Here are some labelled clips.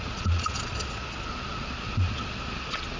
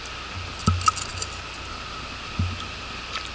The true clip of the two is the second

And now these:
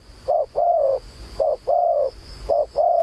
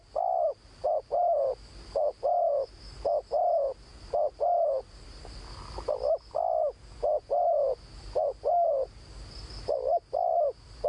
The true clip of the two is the second